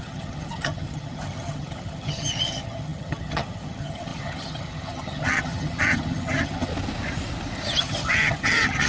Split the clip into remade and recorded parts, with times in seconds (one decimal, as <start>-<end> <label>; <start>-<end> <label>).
0.0-6.7 remade; 6.7-7.8 recorded; 7.8-8.9 remade